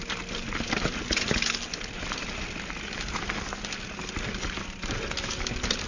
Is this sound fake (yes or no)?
no